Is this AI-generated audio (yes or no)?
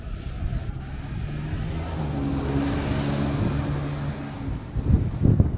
no